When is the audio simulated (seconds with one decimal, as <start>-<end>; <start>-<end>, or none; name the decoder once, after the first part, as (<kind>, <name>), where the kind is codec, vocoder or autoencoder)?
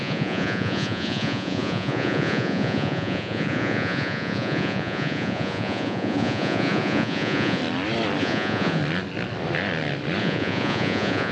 0.0-7.6 (vocoder, Vocos); 8.2-8.8; 10.2-11.3